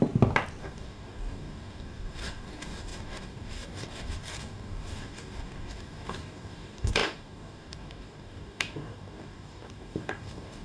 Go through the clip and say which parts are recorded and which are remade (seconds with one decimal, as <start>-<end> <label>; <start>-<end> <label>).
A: 0.0-0.6 recorded; 0.6-10.6 remade